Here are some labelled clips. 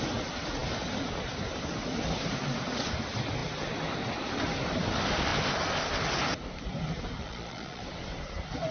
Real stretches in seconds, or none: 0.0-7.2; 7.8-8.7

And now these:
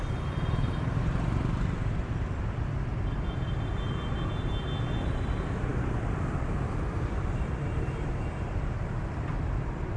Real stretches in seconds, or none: 0.0-10.0

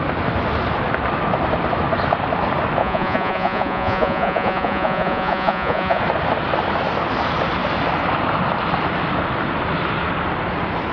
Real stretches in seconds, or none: 0.0-2.8; 6.0-10.9

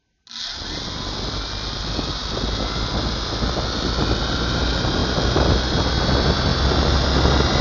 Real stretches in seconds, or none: 0.0-7.6

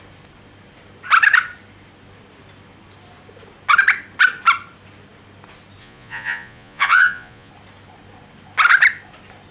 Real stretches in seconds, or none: 0.0-5.8; 7.5-9.5